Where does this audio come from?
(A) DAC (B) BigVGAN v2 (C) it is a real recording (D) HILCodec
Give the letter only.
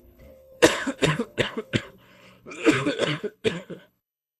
D